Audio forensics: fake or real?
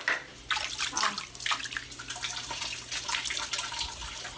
real